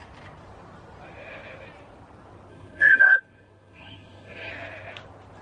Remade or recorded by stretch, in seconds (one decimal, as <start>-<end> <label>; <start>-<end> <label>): 0.0-2.5 recorded; 2.5-4.5 remade; 4.5-5.4 recorded